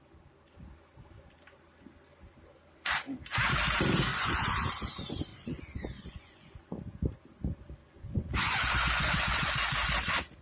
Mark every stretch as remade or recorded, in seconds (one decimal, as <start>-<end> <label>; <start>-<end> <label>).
0.0-4.1 recorded; 4.1-4.7 remade; 4.7-5.3 recorded; 5.3-6.5 remade; 6.5-7.8 recorded; 7.8-9.5 remade; 9.5-10.4 recorded